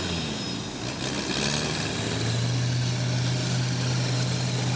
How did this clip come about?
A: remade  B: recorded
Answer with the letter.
B